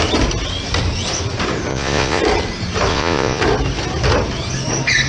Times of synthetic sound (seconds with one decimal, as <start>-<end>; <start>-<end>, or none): 1.7-2.2; 2.9-3.4